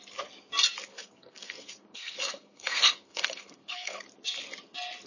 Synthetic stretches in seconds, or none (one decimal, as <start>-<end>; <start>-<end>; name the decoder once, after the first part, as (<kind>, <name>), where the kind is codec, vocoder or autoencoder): 0.9-4.0 (codec, SNAC)